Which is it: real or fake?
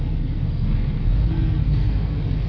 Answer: fake